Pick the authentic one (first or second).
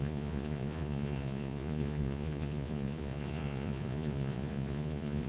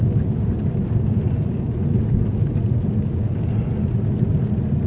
second